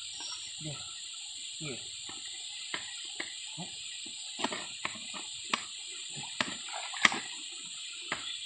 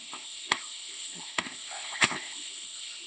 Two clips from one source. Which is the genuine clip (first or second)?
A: first